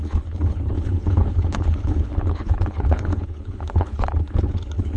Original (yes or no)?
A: no